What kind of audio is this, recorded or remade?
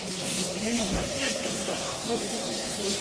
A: remade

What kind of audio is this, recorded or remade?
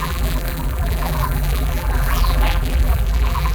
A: remade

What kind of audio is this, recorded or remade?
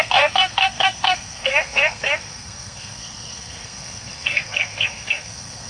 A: remade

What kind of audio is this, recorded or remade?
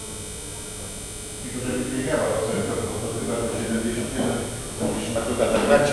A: recorded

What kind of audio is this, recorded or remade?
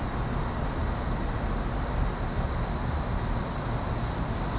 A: recorded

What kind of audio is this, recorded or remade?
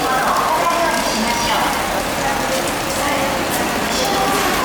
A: recorded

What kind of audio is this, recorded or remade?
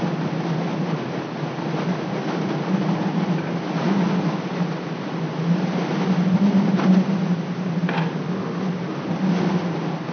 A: recorded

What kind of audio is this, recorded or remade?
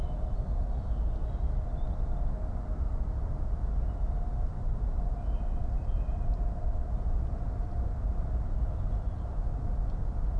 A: recorded